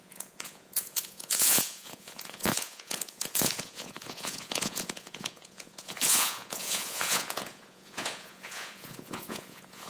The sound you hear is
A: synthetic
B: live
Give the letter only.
A